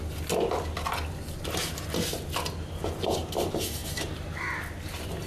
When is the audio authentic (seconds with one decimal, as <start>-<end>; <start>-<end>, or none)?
0.0-5.3